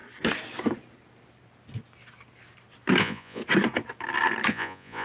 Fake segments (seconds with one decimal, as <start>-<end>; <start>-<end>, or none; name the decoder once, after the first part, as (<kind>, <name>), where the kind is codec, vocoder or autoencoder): 3.0-3.4 (vocoder, Vocos); 4.5-5.0